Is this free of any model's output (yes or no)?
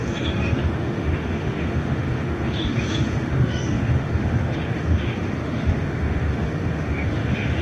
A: no